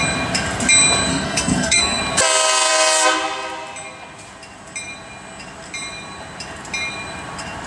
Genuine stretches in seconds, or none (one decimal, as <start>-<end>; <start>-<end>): 0.0-1.1; 2.0-7.7